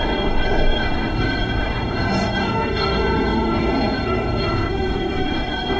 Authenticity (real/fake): fake